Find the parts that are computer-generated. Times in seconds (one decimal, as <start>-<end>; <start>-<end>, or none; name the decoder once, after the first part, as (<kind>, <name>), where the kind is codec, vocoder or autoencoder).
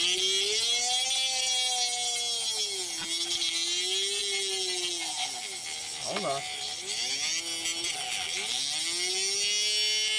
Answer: none